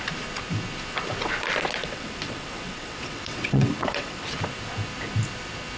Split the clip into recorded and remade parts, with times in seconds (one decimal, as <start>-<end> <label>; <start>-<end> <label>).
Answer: 0.0-1.8 recorded; 1.8-4.4 remade; 4.4-5.8 recorded